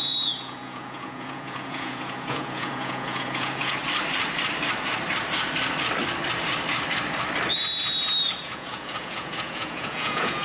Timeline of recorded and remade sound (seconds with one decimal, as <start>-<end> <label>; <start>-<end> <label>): 0.0-3.8 remade; 3.8-8.4 recorded; 8.4-10.4 remade